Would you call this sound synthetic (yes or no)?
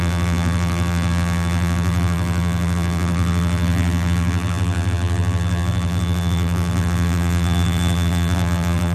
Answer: yes